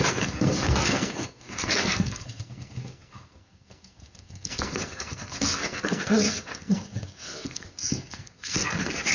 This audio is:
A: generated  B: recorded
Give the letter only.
A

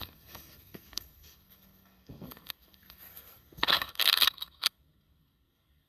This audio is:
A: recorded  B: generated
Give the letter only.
B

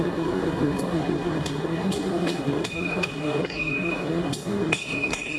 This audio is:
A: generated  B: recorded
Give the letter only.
A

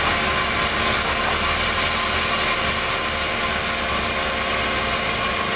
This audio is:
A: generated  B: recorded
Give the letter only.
B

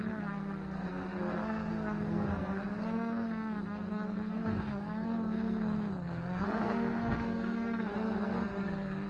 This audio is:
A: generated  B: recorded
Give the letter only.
A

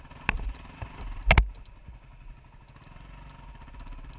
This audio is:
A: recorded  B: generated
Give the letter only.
A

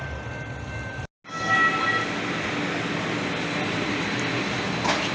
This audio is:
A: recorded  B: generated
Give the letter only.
A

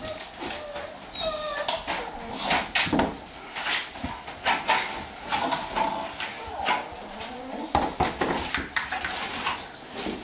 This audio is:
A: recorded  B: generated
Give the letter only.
A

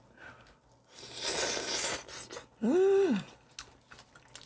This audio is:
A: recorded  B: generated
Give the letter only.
A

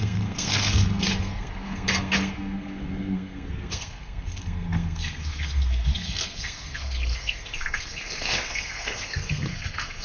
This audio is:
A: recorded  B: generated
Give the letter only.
B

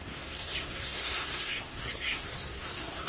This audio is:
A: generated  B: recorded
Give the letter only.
A